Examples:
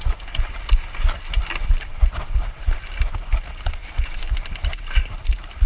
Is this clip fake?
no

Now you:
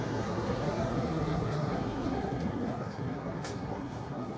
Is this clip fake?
yes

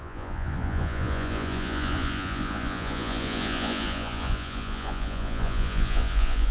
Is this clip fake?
yes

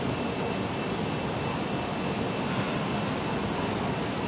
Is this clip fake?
no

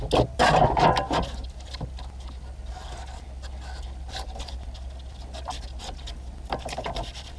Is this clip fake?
no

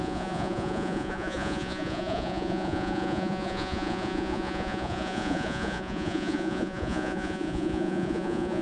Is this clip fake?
yes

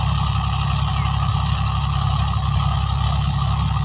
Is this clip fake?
no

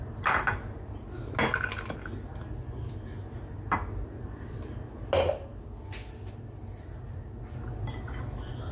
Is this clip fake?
no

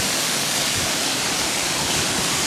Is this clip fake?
yes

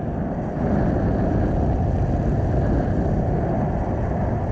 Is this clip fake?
no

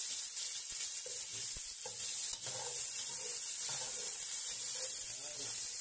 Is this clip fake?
no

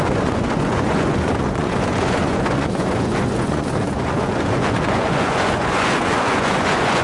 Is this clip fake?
yes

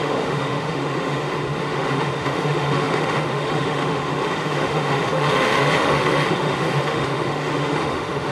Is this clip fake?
yes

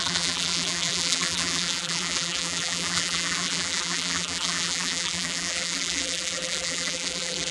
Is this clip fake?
yes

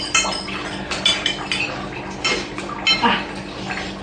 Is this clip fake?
no